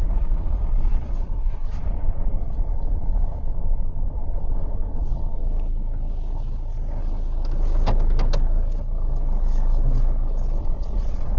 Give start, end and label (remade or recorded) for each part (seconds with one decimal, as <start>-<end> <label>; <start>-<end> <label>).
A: 0.0-5.4 remade; 5.4-10.6 recorded; 10.6-11.4 remade